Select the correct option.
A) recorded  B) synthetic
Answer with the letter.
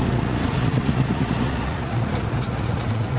B